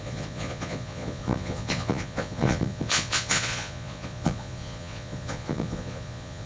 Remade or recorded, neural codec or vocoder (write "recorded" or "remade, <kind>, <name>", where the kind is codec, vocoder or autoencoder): remade, vocoder, Vocos